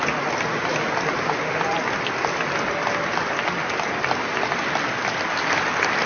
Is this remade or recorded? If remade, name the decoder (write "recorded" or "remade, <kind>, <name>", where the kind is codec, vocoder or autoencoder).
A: recorded